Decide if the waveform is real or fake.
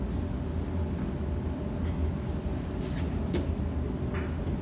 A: real